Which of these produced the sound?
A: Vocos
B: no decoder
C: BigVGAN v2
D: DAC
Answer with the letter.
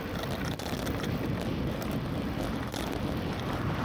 B